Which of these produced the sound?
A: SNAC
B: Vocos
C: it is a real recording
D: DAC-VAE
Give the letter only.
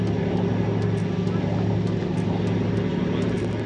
C